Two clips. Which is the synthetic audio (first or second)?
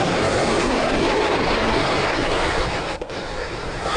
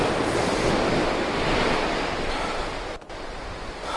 first